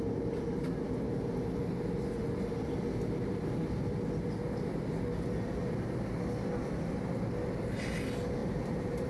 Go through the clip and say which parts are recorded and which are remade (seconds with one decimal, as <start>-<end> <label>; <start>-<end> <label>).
0.0-8.4 recorded; 8.4-9.1 remade